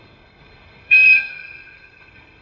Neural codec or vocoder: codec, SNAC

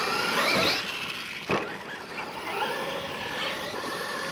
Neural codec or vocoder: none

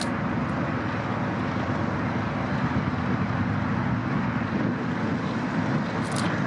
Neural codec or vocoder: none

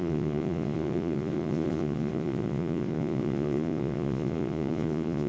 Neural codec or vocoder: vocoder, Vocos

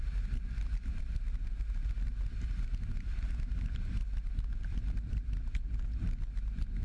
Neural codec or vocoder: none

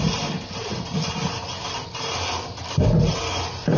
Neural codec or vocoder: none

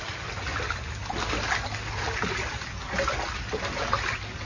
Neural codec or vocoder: none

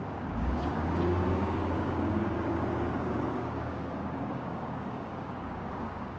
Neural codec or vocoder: codec, DAC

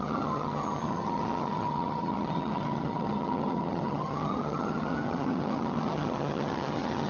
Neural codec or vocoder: vocoder, HiFi-GAN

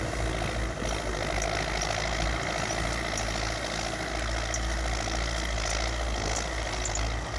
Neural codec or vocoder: none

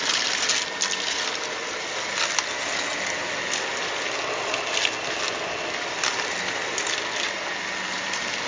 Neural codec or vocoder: none